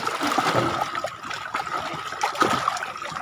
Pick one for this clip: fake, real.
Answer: real